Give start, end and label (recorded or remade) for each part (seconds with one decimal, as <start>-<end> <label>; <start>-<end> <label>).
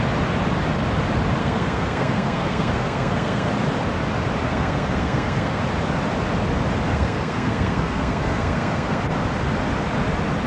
0.0-1.4 recorded; 1.4-3.5 remade; 3.5-4.5 recorded; 4.5-5.6 remade; 5.6-6.9 recorded; 6.9-9.0 remade; 9.0-10.5 recorded